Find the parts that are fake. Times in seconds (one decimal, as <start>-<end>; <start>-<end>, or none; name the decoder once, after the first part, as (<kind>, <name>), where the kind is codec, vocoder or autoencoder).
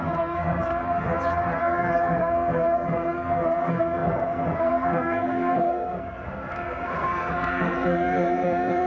0.0-0.8 (codec, SNAC); 1.6-8.9